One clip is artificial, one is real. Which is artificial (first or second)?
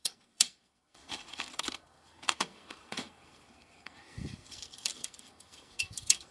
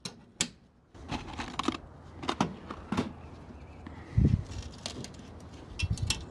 first